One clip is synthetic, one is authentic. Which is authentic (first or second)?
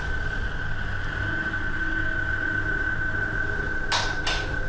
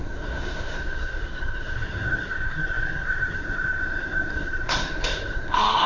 first